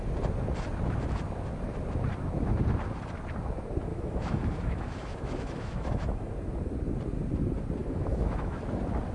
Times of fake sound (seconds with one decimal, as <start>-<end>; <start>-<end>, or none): 3.9-6.3; 7.8-8.6